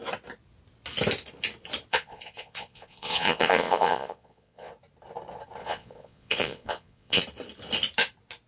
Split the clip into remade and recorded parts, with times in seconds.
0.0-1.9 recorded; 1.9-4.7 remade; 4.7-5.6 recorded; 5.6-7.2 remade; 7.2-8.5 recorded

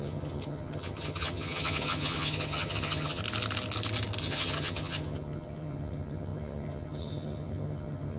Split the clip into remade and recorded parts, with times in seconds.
0.0-3.2 remade; 3.2-4.2 recorded; 4.2-8.2 remade

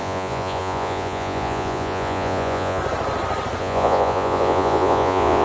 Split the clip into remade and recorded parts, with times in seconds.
0.0-2.8 remade; 2.8-3.6 recorded; 3.6-5.4 remade

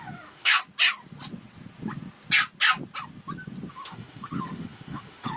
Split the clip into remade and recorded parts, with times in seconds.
0.0-0.5 remade; 0.5-3.7 recorded; 3.7-5.4 remade

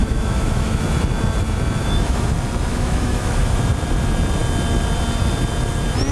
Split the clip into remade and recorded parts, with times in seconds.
0.0-0.8 remade; 0.8-1.8 recorded; 1.8-2.3 remade; 2.3-2.7 recorded; 2.7-3.6 remade; 3.6-6.1 recorded

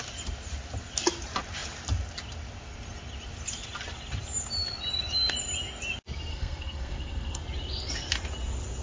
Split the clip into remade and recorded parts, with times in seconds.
0.0-6.3 recorded; 6.3-7.4 remade; 7.4-8.8 recorded

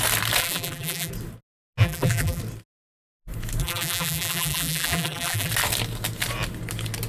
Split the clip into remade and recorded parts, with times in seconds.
0.0-0.4 recorded; 0.4-1.1 remade; 1.1-1.8 recorded; 1.8-2.4 remade; 2.4-3.6 recorded; 3.6-5.5 remade; 5.5-7.1 recorded